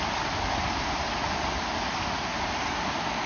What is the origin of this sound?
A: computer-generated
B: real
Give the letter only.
B